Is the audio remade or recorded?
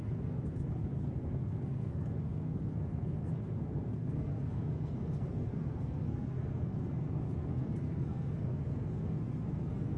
remade